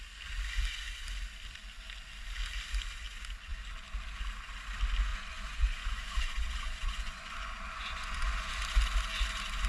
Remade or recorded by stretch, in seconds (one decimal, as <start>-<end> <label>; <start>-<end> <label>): 0.0-5.1 recorded; 5.1-8.5 remade; 8.5-9.7 recorded